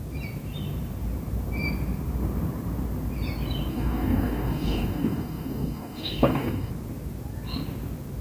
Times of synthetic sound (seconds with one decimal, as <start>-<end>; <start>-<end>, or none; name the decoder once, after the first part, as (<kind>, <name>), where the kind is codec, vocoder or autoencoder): 3.7-6.7 (codec, DAC)